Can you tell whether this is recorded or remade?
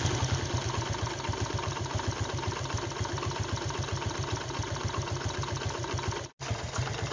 recorded